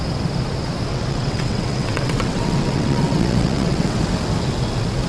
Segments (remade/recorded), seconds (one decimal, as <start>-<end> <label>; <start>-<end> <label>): 0.0-0.9 recorded; 0.9-4.0 remade; 4.0-5.1 recorded